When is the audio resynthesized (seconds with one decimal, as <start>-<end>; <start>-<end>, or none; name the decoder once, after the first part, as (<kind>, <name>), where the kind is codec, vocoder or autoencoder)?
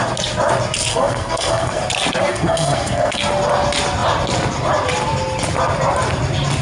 0.9-1.8 (codec, SNAC); 2.3-3.2